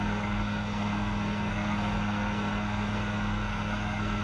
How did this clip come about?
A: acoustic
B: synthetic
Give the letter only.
B